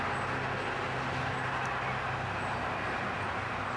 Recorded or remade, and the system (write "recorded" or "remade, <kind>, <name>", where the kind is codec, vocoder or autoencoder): recorded